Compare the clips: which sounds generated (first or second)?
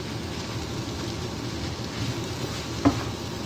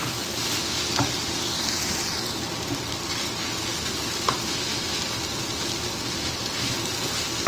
first